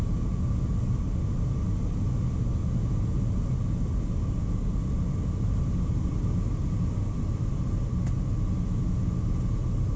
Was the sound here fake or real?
real